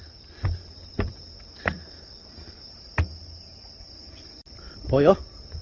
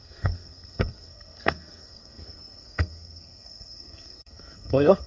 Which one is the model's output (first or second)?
second